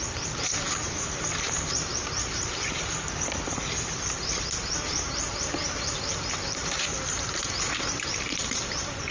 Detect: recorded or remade remade